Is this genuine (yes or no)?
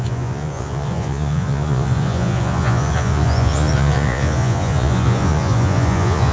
no